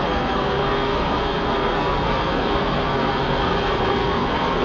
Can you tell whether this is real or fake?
fake